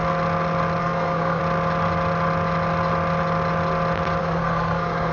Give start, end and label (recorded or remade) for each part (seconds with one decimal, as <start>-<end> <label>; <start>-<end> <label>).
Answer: 0.0-0.8 recorded; 0.8-1.4 remade; 1.4-4.2 recorded; 4.2-5.1 remade